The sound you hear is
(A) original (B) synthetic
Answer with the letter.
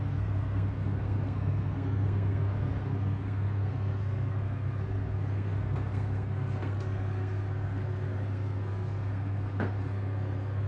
B